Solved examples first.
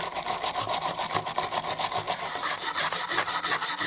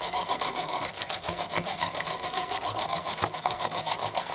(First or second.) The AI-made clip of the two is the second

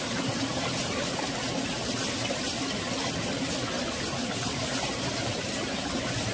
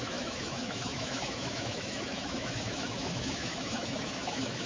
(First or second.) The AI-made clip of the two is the second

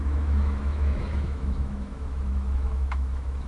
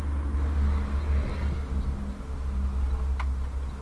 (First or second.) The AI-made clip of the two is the first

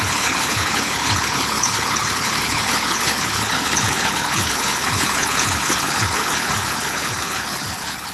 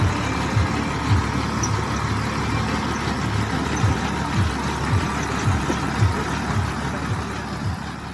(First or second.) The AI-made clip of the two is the first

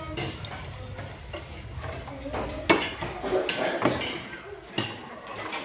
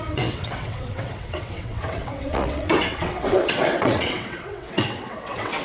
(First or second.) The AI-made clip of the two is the second